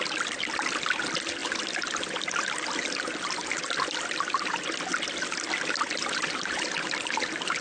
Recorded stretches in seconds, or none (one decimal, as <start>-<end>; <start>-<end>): 0.0-7.6